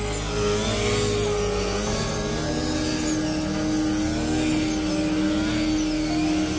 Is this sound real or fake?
real